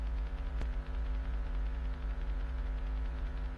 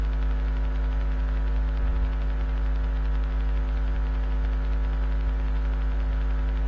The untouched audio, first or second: second